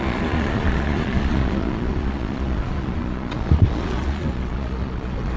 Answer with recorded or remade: remade